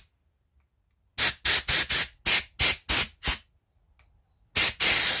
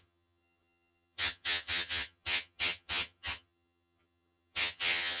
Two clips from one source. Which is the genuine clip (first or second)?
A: first